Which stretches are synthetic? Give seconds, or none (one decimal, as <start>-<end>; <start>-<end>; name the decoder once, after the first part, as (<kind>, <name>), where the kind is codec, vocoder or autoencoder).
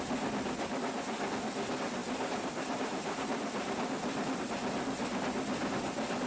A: 2.0-4.4 (vocoder, BigVGAN v2)